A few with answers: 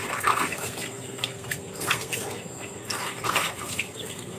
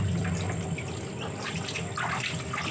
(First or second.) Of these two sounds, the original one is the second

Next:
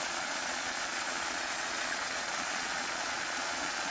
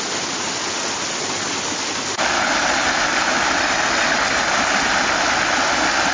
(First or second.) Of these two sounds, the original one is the second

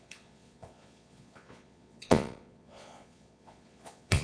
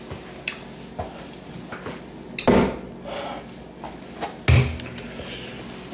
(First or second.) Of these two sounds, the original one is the second